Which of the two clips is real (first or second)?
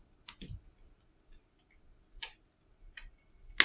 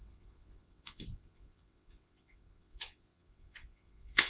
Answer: first